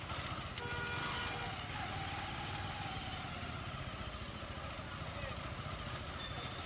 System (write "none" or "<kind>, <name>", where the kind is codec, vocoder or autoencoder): none